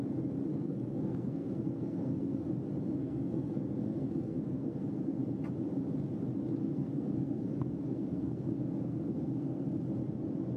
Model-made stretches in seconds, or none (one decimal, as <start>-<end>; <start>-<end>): 0.5-2.4; 3.0-5.2; 6.6-9.8